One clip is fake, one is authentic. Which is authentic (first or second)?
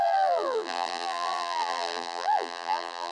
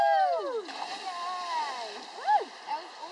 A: second